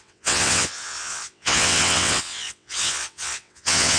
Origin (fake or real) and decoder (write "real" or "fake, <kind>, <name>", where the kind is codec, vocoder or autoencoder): fake, vocoder, WaveNeXt